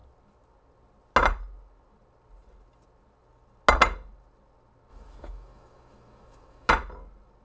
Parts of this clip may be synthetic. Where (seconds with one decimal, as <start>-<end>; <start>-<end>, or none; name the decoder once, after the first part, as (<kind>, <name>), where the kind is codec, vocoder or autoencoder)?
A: 4.9-6.7 (autoencoder, DAC-VAE)